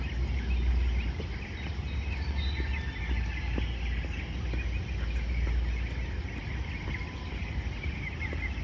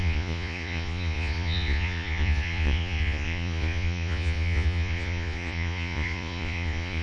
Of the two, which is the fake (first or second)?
second